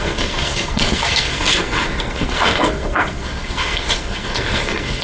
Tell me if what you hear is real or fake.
fake